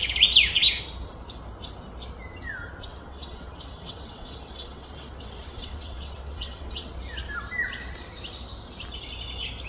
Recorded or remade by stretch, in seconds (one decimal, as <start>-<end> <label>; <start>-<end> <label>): 0.0-2.9 recorded; 2.9-6.9 remade; 6.9-9.7 recorded